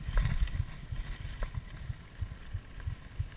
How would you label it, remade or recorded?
recorded